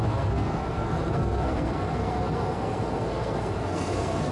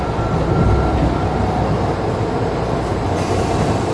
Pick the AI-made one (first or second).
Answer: first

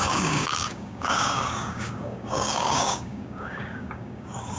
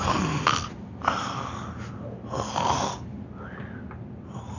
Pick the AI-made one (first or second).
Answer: first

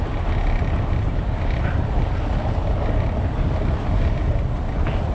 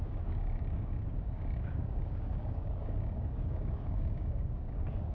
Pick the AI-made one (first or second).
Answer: second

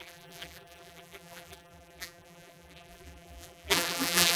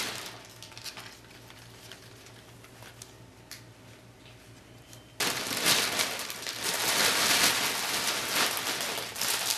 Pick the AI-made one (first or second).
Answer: first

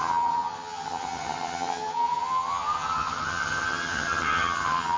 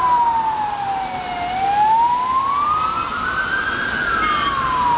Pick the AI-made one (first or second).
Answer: first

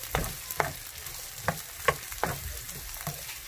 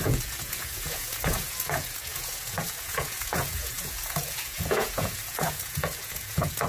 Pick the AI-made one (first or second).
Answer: second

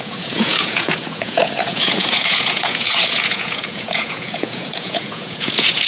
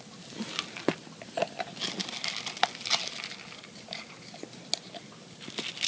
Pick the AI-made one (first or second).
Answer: first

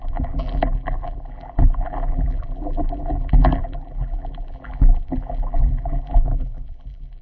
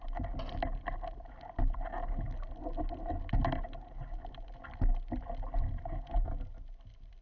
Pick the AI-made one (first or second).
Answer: first